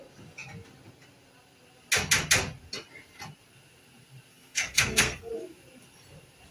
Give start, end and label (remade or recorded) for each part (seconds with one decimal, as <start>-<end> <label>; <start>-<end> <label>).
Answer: 0.0-4.3 recorded; 4.3-5.3 remade; 5.3-6.5 recorded